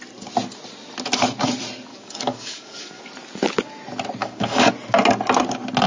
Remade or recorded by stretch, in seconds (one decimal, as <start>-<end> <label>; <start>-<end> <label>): 0.0-1.9 recorded; 1.9-3.0 remade; 3.0-4.2 recorded; 4.2-4.7 remade; 4.7-5.9 recorded